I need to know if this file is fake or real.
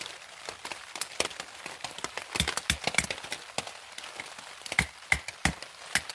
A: real